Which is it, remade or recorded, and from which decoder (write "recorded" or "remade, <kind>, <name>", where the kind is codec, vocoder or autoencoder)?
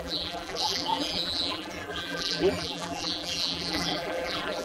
remade, vocoder, BigVGAN v2